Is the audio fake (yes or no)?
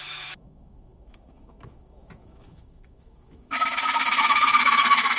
yes